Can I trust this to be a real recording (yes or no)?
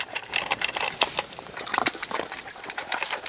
no